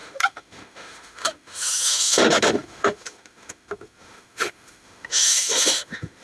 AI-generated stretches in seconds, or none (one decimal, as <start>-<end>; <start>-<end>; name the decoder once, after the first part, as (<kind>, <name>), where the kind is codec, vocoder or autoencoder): 0.0-6.2 (autoencoder, DAC-VAE)